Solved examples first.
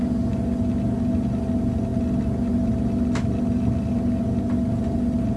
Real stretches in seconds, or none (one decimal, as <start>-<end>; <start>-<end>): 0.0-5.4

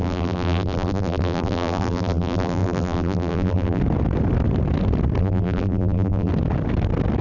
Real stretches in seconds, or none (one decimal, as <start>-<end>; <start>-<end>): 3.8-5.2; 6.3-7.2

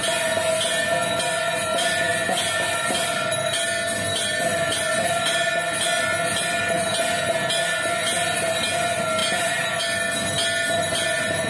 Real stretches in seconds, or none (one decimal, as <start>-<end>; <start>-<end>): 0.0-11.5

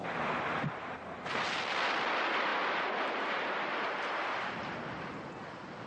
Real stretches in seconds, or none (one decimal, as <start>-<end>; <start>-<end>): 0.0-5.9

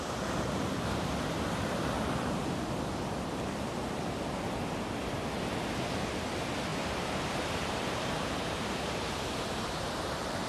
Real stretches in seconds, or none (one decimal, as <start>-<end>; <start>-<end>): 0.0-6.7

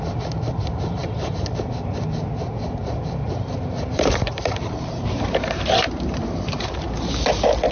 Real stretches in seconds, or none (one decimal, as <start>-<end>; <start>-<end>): 0.0-1.0; 1.7-2.8; 7.1-7.7

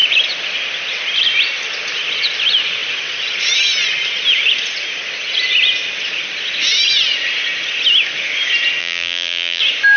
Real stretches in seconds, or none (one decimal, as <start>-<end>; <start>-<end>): 0.0-8.8; 9.6-10.0

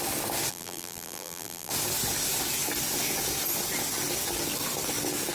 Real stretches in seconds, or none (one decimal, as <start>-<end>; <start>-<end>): 0.0-0.5; 1.7-5.3